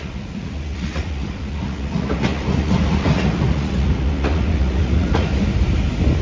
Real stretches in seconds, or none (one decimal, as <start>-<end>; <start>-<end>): 5.3-6.2